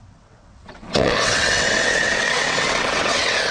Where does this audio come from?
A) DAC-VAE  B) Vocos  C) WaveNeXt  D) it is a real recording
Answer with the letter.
C